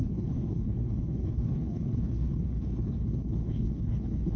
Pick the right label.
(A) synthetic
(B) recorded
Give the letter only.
A